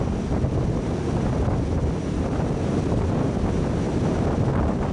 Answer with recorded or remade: recorded